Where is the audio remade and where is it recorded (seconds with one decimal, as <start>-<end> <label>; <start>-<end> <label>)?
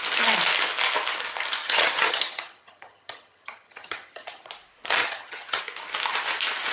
0.0-1.6 recorded; 1.6-4.5 remade; 4.5-5.0 recorded; 5.0-5.6 remade; 5.6-6.7 recorded